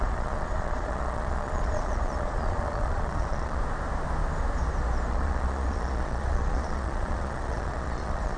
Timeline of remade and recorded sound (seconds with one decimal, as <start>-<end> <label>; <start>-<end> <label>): 0.0-3.6 remade; 3.6-5.1 recorded; 5.1-8.4 remade